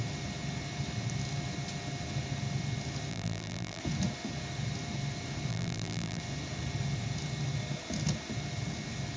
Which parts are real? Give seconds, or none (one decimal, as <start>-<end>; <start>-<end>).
0.0-3.1; 3.8-5.5; 6.2-9.2